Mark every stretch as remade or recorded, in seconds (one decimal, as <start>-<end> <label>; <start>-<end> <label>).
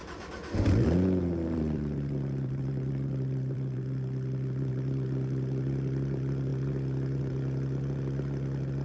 0.0-6.5 remade; 6.5-7.2 recorded; 7.2-8.8 remade